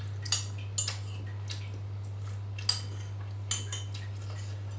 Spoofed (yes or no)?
no